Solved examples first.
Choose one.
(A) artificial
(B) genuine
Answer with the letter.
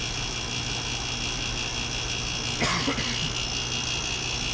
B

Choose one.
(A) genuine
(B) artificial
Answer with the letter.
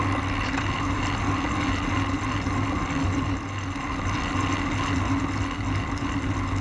A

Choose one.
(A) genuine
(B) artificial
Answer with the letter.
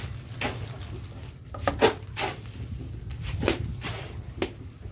A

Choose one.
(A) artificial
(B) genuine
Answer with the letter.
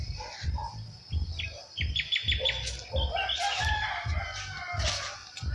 B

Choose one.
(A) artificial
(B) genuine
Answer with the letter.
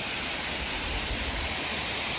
B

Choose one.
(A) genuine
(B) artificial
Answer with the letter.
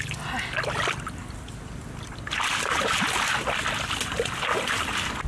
A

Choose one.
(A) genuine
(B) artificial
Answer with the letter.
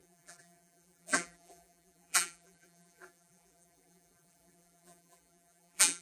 B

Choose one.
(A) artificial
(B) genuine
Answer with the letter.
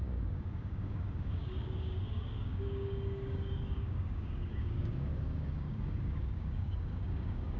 A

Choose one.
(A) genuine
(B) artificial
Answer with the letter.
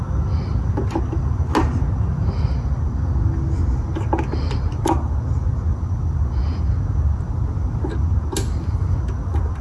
A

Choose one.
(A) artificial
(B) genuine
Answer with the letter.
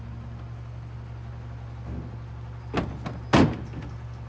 B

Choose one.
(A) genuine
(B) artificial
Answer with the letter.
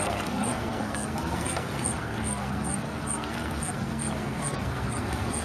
B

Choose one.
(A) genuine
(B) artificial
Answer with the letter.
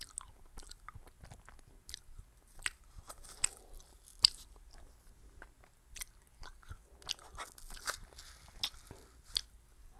A